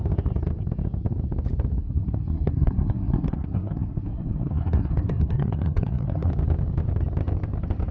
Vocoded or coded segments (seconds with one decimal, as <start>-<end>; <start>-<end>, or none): 1.8-6.3